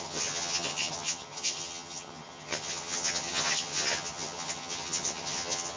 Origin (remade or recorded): remade